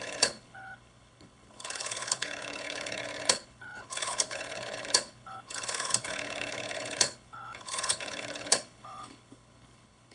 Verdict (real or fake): fake